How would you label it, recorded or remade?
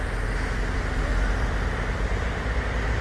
remade